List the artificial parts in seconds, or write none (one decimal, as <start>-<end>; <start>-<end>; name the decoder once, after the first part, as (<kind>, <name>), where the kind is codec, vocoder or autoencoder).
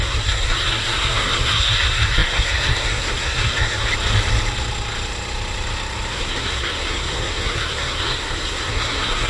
0.0-3.9 (codec, SNAC); 6.1-9.3